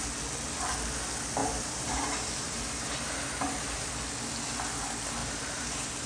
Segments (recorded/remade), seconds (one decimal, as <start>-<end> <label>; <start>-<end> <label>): 0.0-1.4 recorded; 1.4-3.9 remade; 3.9-5.2 recorded; 5.2-6.1 remade